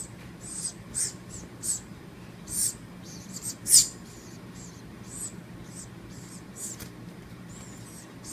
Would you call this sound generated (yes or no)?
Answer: yes